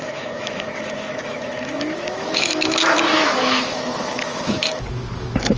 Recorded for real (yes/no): no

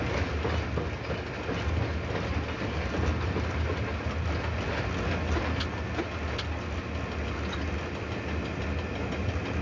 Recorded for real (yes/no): yes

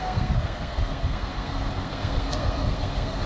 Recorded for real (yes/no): no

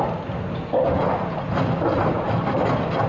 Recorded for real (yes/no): yes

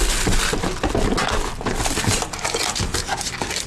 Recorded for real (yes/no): yes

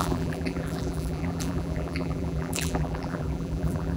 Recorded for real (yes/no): no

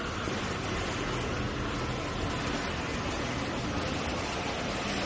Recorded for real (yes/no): yes